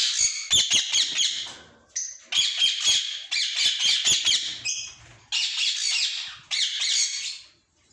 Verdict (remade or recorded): recorded